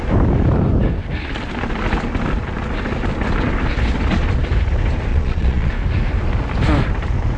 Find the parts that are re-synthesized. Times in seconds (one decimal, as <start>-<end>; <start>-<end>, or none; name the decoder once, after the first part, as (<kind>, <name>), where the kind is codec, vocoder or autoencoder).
5.1-5.7 (vocoder, Vocos)